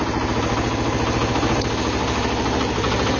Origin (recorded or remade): recorded